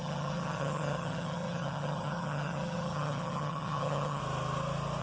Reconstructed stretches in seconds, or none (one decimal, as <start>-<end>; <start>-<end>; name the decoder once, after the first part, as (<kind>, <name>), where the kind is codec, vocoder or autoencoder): 0.0-4.2 (vocoder, HiFi-GAN)